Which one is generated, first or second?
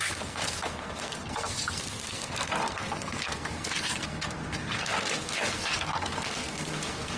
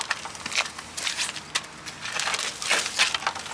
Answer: first